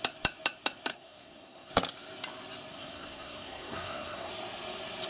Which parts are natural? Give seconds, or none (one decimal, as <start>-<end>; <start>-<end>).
0.0-0.9; 1.7-2.7; 4.3-5.1

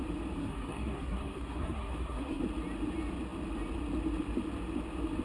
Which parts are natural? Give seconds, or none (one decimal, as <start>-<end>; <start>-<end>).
0.0-0.4; 2.4-5.2

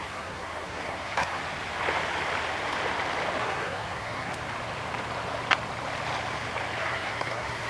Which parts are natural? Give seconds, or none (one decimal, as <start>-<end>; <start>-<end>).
1.4-3.4; 4.3-6.8

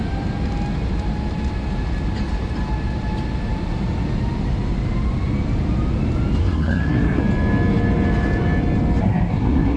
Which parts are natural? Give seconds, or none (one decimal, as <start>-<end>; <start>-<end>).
0.0-6.4; 7.2-9.0

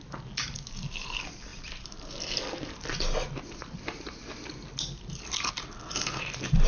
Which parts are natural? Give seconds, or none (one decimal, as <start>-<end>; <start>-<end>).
0.0-6.7

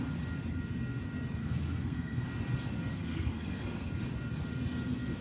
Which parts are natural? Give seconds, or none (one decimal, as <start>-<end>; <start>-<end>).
0.0-1.4; 2.3-2.9; 3.9-5.2

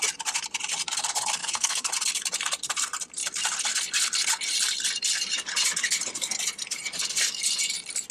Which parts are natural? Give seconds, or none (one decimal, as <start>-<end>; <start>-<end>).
0.0-1.4; 1.9-8.1

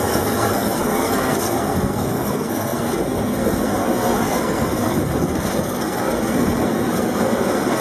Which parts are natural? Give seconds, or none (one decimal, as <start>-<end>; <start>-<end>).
none